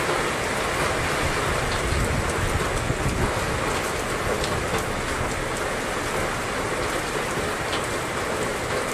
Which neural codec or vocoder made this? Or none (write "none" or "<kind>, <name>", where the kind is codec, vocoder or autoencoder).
none